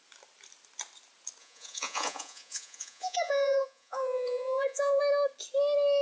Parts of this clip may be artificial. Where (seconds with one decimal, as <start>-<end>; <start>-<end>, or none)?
1.4-5.0

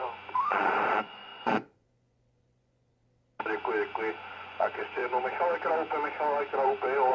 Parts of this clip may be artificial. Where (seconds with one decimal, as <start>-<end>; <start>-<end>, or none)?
0.0-3.0; 4.1-5.0